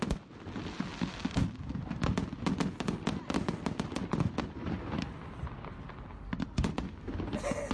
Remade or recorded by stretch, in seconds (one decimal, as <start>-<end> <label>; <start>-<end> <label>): 0.0-7.7 recorded